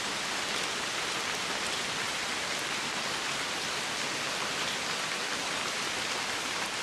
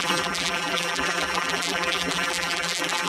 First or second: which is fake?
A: second